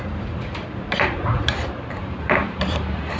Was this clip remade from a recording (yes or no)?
yes